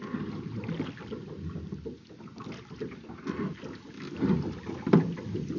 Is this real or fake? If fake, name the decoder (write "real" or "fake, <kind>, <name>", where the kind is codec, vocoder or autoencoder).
real